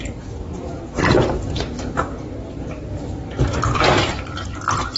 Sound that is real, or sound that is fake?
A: real